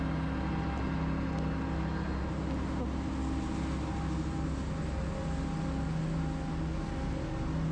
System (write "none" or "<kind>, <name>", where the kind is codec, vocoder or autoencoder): none